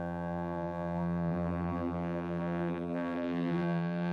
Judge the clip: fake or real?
fake